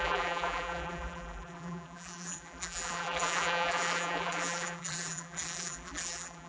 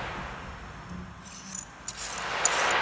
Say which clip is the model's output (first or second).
first